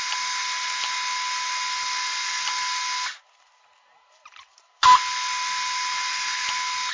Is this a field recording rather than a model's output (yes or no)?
yes